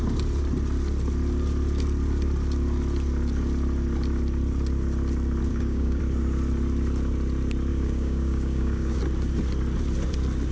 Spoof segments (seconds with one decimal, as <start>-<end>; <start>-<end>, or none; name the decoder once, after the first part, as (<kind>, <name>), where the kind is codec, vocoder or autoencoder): 5.5-6.0 (codec, DAC); 7.7-9.0